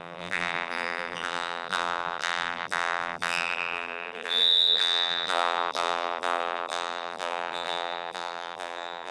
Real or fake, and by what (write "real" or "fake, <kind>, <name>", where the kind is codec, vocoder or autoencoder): fake, vocoder, BigVGAN v2